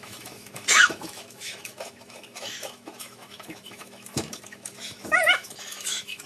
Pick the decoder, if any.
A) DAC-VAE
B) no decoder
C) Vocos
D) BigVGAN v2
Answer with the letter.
A